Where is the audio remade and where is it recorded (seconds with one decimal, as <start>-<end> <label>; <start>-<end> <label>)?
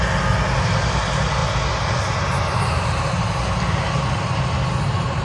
0.0-5.2 recorded